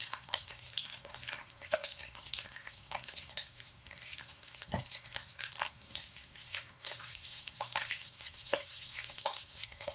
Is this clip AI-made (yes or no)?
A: yes